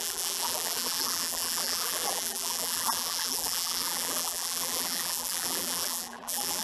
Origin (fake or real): fake